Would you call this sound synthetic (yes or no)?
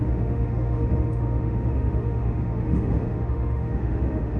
yes